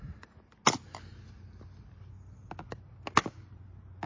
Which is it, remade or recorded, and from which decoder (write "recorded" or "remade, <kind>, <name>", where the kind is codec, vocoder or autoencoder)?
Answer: recorded